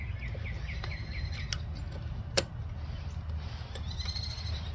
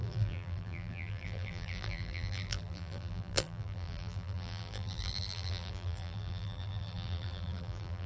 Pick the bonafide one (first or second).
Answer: first